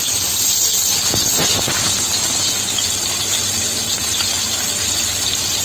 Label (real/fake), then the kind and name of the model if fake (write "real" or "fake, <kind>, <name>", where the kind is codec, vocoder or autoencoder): real